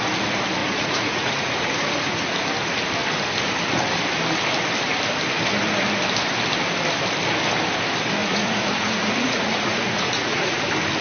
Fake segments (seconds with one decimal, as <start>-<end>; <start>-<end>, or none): 0.6-2.3; 8.2-10.6